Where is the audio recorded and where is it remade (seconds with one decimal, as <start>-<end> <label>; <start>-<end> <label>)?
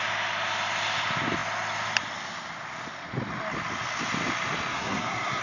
0.0-4.7 recorded; 4.7-5.4 remade